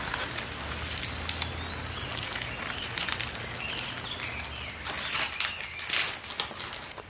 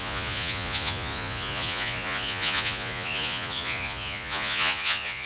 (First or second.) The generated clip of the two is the second